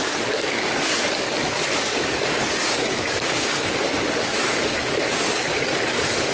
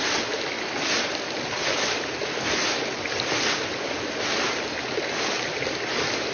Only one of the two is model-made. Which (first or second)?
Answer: first